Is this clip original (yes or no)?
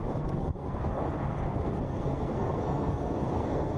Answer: no